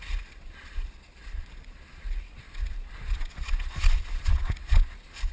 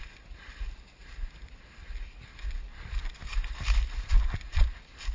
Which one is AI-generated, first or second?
first